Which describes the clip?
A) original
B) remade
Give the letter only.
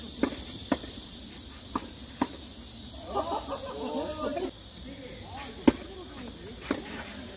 A